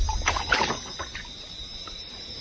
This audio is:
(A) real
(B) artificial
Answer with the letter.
A